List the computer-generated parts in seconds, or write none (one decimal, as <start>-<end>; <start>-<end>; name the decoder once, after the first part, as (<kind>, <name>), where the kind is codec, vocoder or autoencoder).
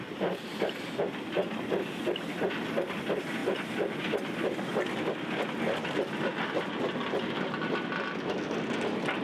none